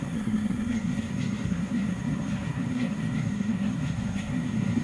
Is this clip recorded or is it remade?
remade